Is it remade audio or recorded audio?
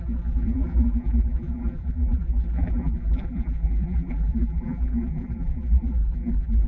remade